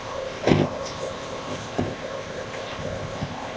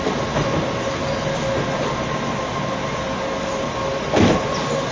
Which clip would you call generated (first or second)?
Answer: first